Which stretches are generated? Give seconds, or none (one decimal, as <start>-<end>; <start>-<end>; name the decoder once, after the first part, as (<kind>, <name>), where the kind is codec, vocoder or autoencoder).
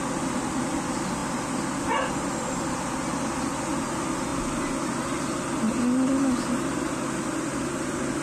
none